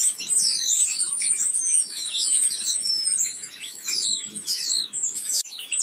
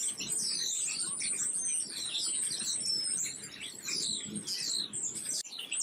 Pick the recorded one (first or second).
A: second